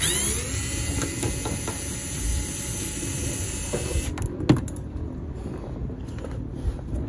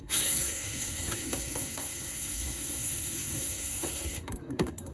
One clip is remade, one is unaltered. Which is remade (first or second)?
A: second